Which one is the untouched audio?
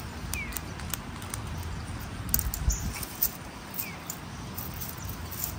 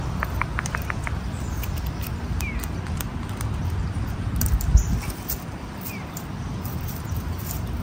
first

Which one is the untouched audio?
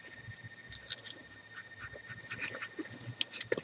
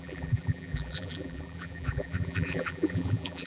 first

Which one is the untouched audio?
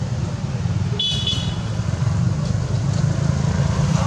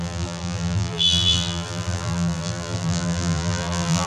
first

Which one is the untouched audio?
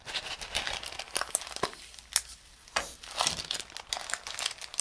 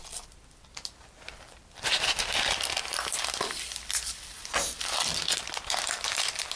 first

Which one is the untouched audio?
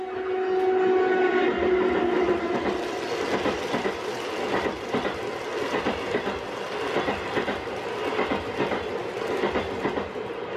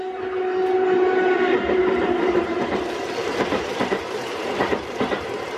first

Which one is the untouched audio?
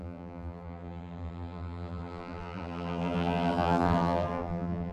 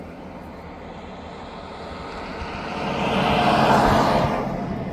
second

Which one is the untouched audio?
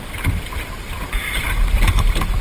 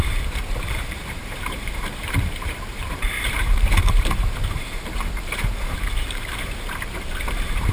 first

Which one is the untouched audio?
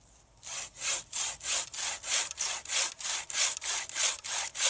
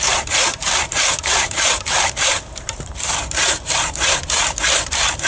first